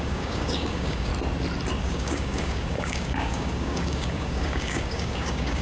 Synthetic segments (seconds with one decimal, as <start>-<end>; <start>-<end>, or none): 0.0-1.1; 1.8-5.6